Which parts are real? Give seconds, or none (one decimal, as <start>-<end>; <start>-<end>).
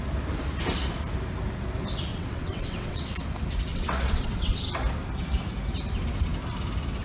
0.0-2.1; 3.0-3.7; 4.8-7.0